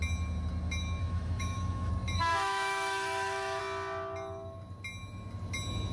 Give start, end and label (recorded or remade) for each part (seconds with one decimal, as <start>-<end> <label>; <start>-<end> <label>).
0.0-1.0 recorded; 1.0-1.9 remade; 1.9-2.3 recorded; 2.3-3.6 remade; 3.6-5.9 recorded